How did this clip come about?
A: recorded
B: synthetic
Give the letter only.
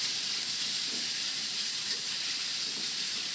A